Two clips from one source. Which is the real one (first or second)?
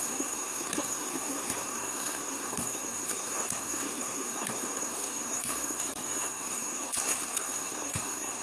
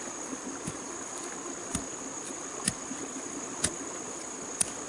second